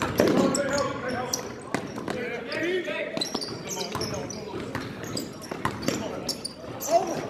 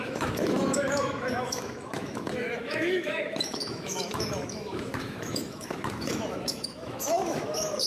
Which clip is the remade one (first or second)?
second